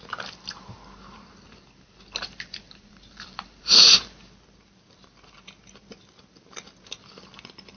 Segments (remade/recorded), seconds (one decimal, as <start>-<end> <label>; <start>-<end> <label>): 0.0-2.2 recorded; 2.2-4.0 remade; 4.0-7.8 recorded